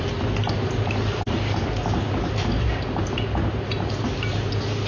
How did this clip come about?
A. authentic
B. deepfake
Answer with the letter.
A